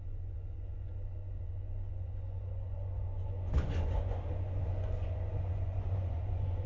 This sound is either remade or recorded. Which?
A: remade